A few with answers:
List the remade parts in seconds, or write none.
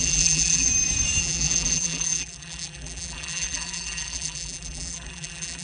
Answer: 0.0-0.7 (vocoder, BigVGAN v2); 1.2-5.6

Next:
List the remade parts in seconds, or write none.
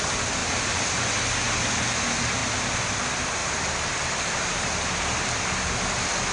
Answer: 0.4-1.0 (vocoder, BigVGAN v2); 3.4-5.7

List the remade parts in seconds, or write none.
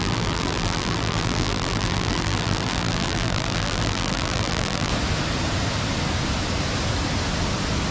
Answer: 0.0-4.9 (vocoder, BigVGAN v2)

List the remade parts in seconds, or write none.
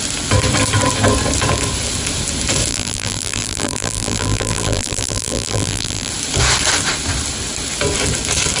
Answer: 2.7-6.1 (vocoder, BigVGAN v2)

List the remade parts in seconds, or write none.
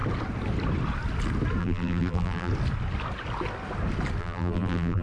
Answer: 1.6-2.5 (vocoder, BigVGAN v2); 4.2-5.0